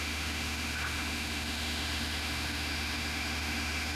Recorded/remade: remade